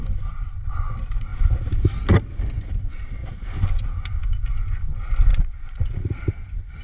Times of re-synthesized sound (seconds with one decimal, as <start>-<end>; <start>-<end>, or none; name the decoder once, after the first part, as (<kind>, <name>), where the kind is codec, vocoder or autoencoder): 5.3-6.0 (vocoder, Vocos)

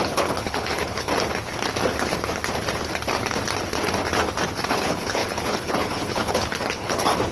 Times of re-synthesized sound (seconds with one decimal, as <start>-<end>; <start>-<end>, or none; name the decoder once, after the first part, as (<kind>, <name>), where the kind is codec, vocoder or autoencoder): 0.0-1.1 (codec, HILCodec); 4.7-7.3